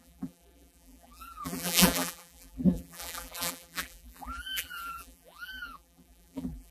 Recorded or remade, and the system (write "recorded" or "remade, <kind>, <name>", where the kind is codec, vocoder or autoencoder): remade, vocoder, BigVGAN v2